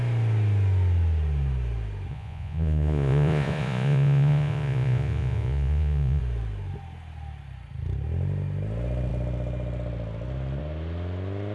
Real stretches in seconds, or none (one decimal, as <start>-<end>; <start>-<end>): 0.0-2.1; 6.2-11.5